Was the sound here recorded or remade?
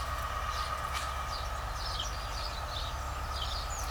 recorded